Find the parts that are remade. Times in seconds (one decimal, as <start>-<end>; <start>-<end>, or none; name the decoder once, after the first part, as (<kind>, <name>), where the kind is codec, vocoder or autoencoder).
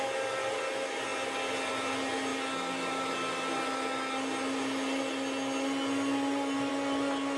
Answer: none